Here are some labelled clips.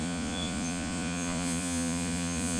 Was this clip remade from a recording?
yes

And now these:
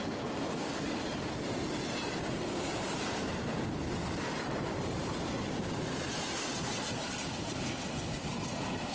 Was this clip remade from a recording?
yes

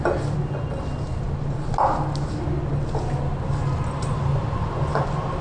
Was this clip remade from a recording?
no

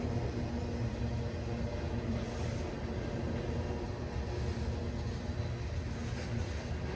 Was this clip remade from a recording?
no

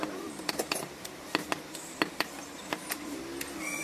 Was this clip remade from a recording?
no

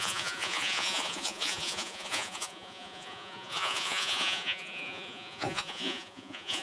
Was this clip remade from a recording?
yes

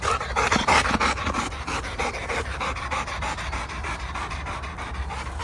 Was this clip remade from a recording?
no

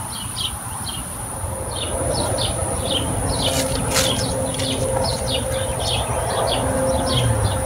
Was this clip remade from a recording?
no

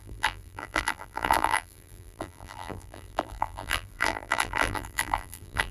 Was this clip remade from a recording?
yes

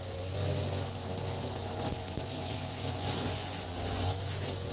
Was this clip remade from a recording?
yes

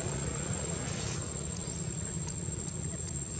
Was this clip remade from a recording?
yes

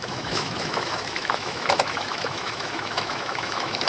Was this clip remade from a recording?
yes